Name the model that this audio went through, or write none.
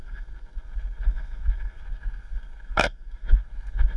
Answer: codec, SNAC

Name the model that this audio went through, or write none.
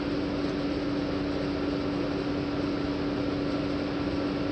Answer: none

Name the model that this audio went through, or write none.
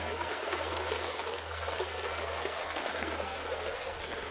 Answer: codec, SNAC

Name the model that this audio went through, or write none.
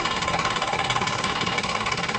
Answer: codec, SNAC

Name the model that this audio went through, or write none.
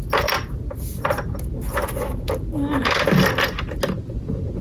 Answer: none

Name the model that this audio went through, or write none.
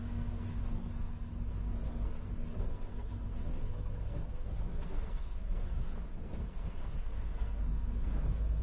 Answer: codec, SNAC